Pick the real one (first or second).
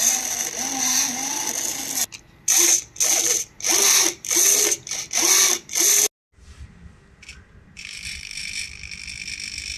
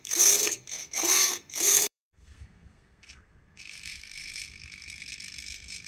first